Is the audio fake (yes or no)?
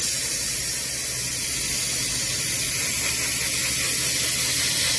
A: no